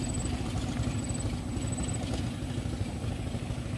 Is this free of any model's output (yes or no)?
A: yes